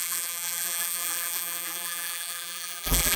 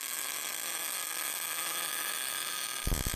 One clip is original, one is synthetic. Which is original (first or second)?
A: second